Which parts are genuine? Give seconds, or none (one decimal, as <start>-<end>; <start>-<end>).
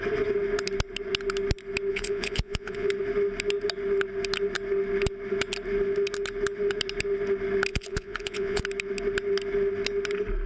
0.0-1.9; 2.9-7.7; 8.6-10.5